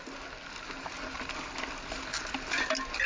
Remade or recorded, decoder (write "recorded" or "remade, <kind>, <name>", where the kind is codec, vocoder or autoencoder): recorded